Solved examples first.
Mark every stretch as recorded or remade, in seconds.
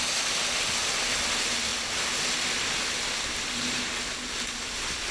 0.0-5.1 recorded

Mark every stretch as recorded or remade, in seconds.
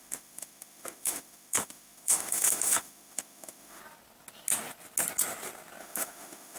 0.0-3.8 remade; 3.8-5.8 recorded; 5.8-6.6 remade